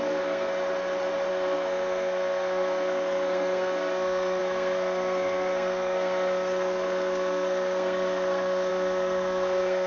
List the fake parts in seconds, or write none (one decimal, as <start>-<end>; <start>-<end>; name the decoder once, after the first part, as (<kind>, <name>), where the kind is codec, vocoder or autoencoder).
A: 0.0-0.5 (codec, SNAC); 1.3-9.9